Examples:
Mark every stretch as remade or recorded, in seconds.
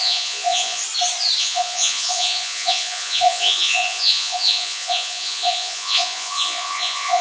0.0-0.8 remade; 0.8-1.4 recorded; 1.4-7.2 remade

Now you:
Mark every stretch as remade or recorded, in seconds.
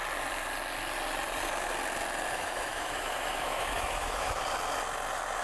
0.0-2.3 recorded; 2.3-4.4 remade; 4.4-5.4 recorded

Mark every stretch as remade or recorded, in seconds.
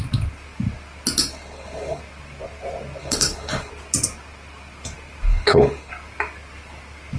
0.0-1.3 recorded; 1.3-2.0 remade; 2.0-3.0 recorded; 3.0-3.7 remade; 3.7-5.3 recorded; 5.3-5.9 remade; 5.9-7.2 recorded